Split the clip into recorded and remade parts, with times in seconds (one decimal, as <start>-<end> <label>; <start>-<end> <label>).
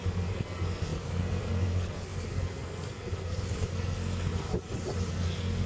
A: 0.0-4.5 remade; 4.5-5.1 recorded; 5.1-5.7 remade